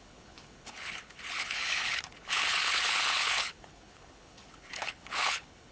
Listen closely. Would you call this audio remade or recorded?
remade